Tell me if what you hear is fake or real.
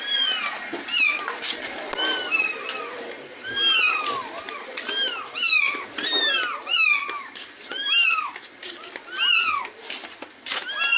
real